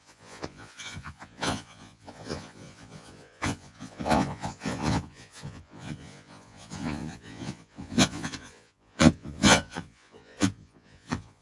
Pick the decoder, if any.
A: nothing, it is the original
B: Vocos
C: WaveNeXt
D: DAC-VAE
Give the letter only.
B